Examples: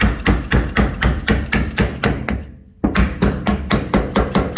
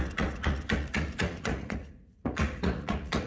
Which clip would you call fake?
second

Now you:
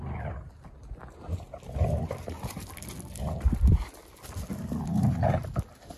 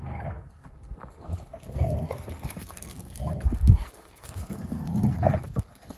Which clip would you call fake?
second